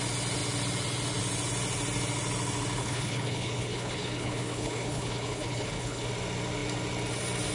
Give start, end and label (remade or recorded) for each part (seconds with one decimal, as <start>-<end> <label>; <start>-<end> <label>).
0.0-2.8 recorded; 2.8-6.1 remade; 6.1-7.5 recorded